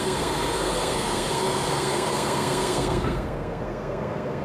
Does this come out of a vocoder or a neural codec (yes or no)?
yes